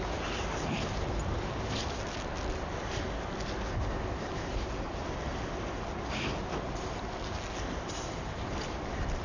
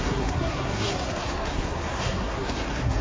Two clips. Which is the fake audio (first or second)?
second